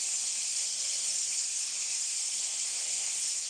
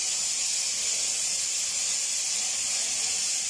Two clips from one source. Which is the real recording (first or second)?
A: second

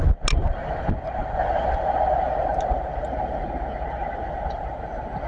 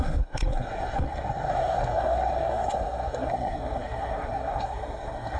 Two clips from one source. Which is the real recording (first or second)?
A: first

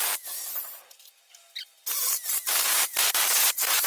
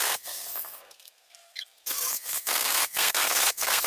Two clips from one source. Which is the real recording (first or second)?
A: first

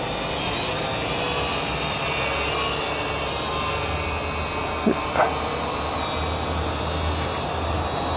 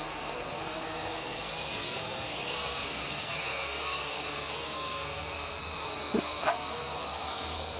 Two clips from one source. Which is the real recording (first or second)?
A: first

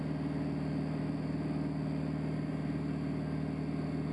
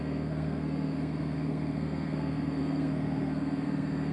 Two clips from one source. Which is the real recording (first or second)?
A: first